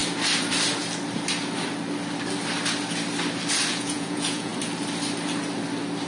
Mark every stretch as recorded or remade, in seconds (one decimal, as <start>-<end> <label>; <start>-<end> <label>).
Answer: 0.0-3.7 recorded; 3.7-4.5 remade; 4.5-6.1 recorded